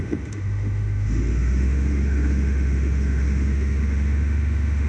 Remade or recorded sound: remade